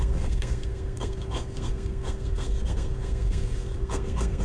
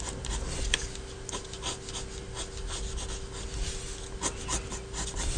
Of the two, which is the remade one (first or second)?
first